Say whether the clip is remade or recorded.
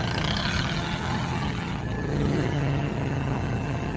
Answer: remade